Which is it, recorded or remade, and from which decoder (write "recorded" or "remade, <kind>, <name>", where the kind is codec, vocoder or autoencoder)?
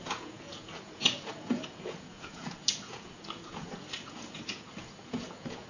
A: remade, vocoder, Vocos